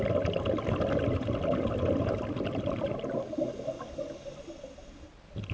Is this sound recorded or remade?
recorded